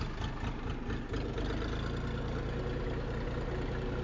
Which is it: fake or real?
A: real